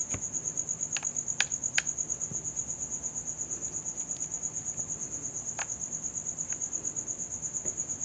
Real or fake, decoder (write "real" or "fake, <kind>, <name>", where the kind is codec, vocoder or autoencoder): real